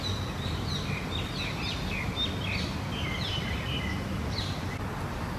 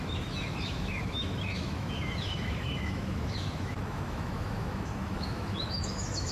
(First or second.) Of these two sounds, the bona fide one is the first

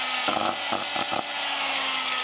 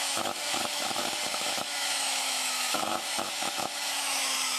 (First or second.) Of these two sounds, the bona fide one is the first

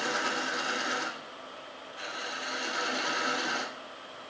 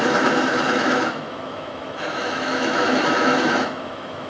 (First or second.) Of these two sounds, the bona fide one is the first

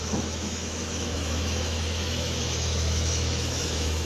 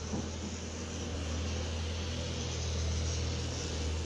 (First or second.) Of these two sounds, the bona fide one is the second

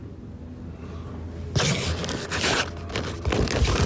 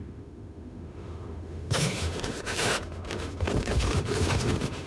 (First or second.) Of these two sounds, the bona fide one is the first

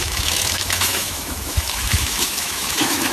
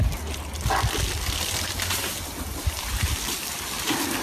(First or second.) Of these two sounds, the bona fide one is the second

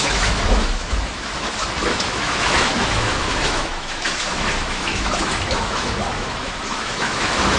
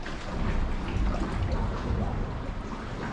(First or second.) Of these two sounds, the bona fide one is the second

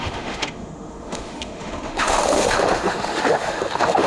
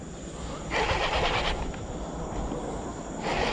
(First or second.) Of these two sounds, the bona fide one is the second